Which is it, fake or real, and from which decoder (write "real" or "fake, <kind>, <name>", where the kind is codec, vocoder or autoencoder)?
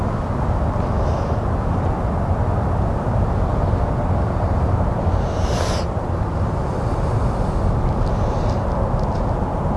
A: real